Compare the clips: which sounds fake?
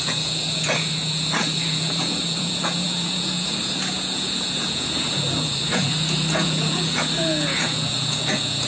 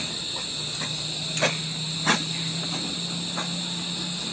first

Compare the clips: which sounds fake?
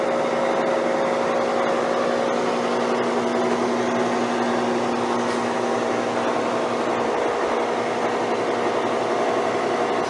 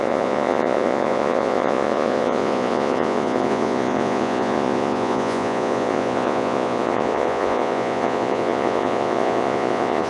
second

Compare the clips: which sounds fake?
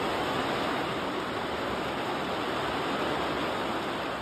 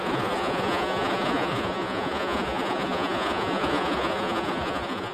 second